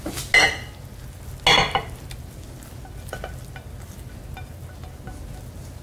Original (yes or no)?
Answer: yes